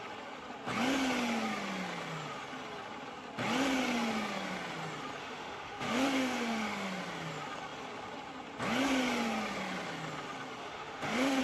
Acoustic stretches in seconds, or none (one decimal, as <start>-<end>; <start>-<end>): 0.0-5.2; 6.9-10.6